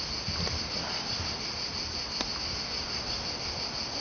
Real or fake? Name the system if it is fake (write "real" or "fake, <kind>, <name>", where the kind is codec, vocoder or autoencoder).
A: real